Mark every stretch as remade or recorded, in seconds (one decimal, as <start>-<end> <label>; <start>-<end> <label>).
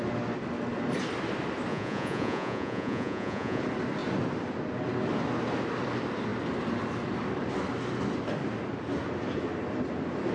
0.0-1.7 recorded; 1.7-3.6 remade; 3.6-10.3 recorded